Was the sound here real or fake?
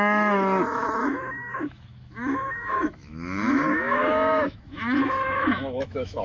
fake